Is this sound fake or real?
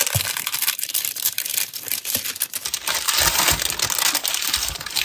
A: real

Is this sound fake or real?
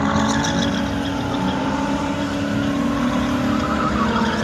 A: real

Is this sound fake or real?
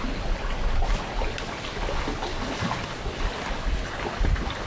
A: real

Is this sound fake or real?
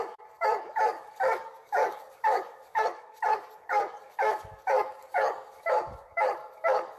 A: fake